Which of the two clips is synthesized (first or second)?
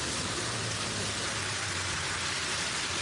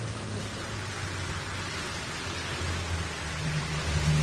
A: first